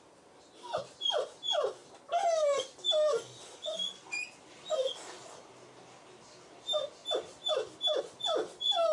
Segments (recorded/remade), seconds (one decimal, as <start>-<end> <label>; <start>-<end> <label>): 0.0-8.9 recorded